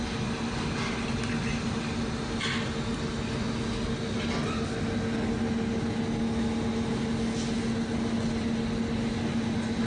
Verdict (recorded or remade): recorded